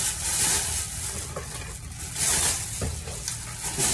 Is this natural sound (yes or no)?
yes